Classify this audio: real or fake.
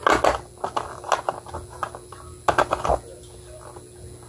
real